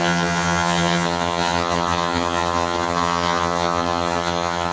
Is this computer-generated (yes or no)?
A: yes